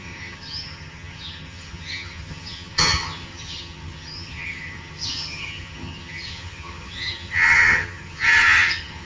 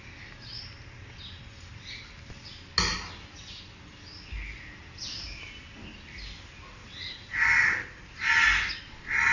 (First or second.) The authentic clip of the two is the second